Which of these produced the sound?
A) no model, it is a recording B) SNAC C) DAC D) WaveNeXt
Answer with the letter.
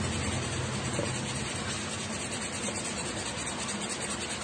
A